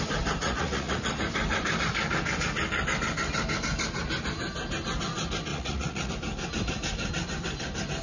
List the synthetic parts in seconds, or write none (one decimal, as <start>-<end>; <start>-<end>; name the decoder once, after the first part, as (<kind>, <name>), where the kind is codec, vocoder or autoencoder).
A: 0.4-1.1 (vocoder, Vocos); 5.5-6.1

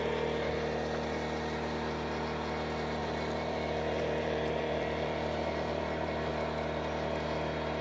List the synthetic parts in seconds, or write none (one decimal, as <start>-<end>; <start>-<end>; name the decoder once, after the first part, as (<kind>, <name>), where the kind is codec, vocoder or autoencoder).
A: 3.0-6.3 (vocoder, BigVGAN v2)